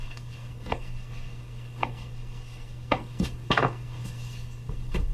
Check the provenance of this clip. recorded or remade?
remade